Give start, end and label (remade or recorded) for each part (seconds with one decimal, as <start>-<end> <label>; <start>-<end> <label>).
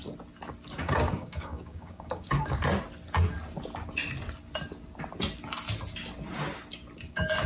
0.0-0.8 recorded; 0.8-2.6 remade; 2.6-7.1 recorded; 7.1-7.5 remade